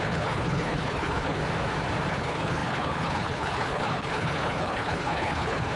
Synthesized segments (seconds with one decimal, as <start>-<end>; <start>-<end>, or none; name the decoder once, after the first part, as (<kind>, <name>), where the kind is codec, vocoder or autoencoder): 0.0-1.4 (codec, HILCodec); 2.1-5.8